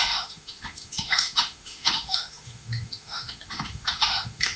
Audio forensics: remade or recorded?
remade